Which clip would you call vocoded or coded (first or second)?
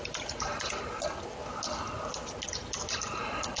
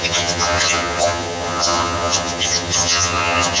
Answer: second